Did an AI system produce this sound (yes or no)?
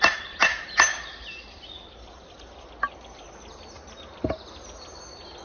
no